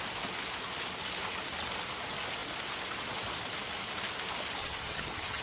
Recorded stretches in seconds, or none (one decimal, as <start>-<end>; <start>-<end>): 0.0-4.6